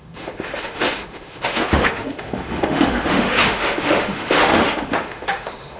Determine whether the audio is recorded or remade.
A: remade